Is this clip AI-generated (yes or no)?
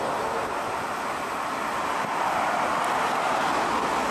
no